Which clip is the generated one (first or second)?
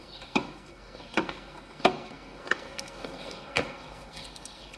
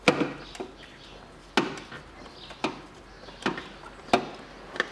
first